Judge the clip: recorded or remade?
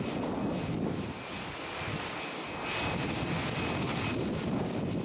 recorded